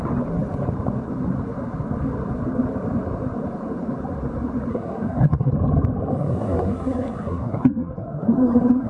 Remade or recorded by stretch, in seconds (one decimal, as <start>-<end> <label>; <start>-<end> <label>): 0.0-4.7 recorded; 4.7-5.5 remade; 5.5-6.2 recorded; 6.2-8.9 remade